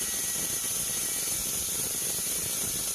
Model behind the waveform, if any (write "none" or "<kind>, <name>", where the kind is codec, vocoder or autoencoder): none